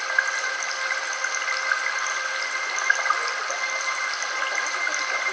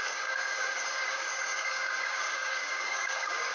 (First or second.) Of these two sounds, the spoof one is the second